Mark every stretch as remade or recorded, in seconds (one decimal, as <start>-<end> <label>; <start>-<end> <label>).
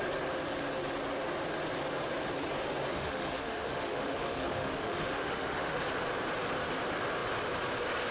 0.0-2.9 recorded; 2.9-5.8 remade; 5.8-8.1 recorded